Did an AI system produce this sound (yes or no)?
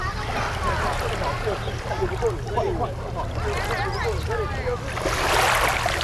no